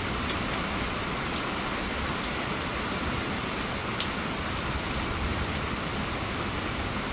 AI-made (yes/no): no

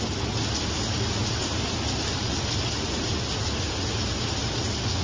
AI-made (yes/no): no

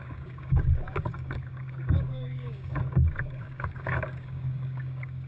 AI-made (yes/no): yes